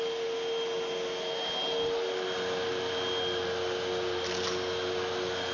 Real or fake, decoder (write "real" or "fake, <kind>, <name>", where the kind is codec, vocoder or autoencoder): real